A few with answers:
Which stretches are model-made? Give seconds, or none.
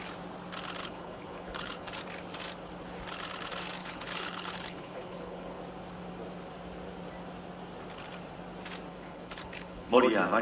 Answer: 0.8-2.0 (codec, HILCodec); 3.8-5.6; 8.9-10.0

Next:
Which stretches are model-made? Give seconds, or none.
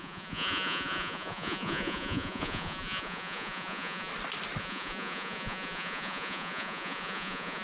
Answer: 0.0-4.1 (vocoder, Vocos); 4.6-7.6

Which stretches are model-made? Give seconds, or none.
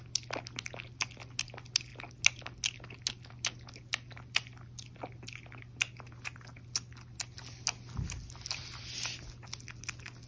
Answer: none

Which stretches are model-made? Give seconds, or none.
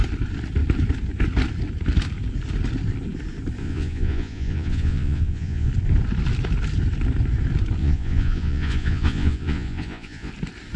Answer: 3.6-5.7 (vocoder, Vocos); 7.8-10.3